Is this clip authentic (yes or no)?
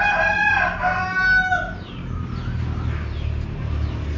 yes